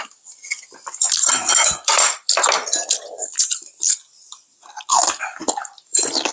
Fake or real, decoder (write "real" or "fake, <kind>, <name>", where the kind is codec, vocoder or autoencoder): fake, vocoder, BigVGAN v2